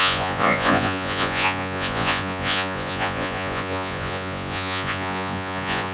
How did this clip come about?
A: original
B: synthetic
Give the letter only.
B